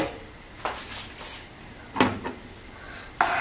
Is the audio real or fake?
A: real